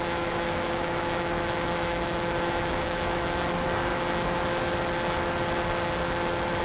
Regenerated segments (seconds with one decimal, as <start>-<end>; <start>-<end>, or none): 0.0-3.9